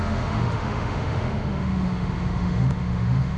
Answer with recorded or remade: remade